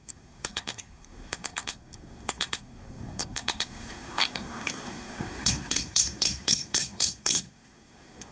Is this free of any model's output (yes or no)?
no